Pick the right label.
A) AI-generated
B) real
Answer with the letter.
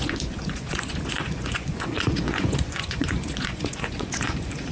A